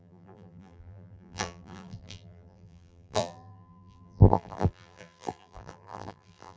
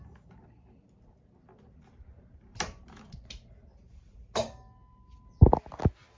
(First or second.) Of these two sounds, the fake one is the first